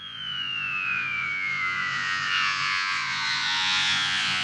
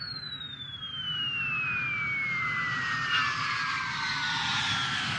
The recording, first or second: second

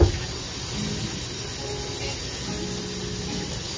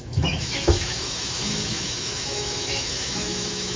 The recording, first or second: first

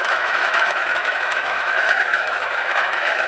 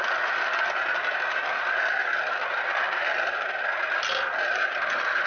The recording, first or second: second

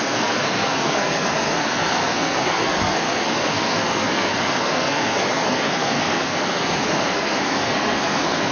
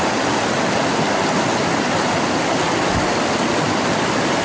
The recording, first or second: second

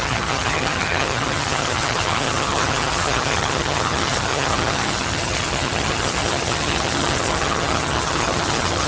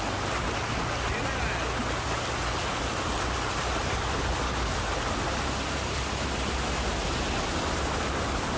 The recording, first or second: second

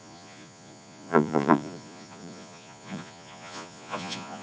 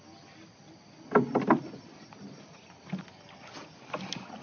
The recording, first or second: second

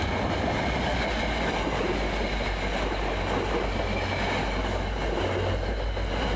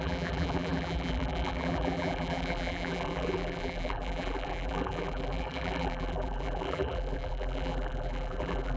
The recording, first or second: first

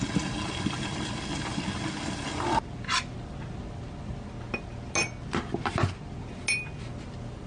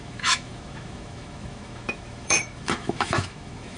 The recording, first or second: first